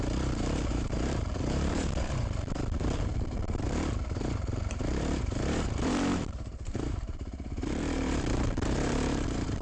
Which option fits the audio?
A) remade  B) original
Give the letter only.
A